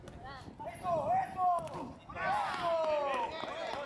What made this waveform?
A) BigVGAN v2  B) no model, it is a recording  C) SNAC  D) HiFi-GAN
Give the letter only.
B